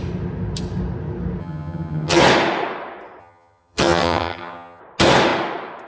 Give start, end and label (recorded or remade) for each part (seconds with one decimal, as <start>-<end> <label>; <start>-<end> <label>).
0.0-1.4 recorded; 1.4-2.2 remade; 2.2-3.2 recorded; 3.2-4.8 remade; 4.8-5.9 recorded